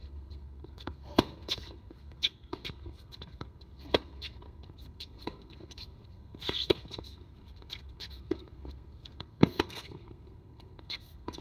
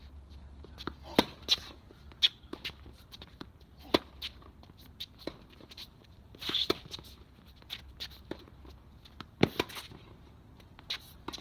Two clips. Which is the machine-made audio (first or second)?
first